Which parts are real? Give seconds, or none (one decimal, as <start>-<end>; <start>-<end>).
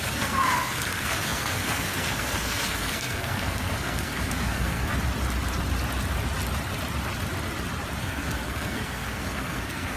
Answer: 4.9-8.0